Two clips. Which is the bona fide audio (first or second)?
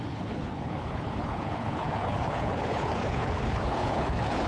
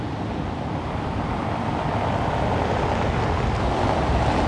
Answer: second